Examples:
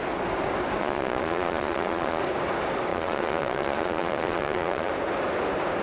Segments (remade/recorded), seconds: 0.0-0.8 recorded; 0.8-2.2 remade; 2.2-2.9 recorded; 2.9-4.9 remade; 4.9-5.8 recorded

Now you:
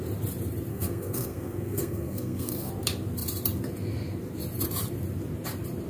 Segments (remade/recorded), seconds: 0.0-0.7 recorded; 0.7-2.7 remade; 2.7-5.9 recorded

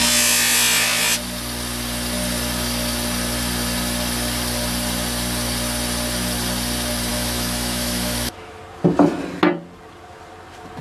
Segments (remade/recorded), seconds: 0.0-7.1 recorded; 7.1-8.6 remade; 8.6-10.8 recorded

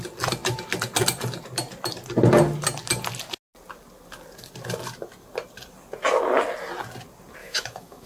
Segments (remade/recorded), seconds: 0.0-7.4 recorded; 7.4-8.1 remade

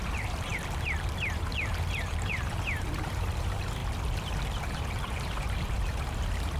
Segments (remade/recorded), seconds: 0.0-0.5 remade; 0.5-1.4 recorded; 1.4-3.8 remade; 3.8-4.6 recorded; 4.6-6.6 remade

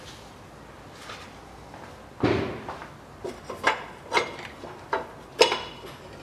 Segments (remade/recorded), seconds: 0.0-6.2 recorded

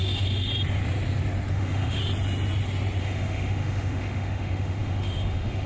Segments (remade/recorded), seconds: 0.0-0.5 remade; 0.5-1.5 recorded; 1.5-2.0 remade; 2.0-3.0 recorded; 3.0-5.7 remade

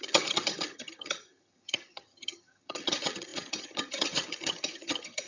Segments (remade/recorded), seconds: 0.0-5.3 remade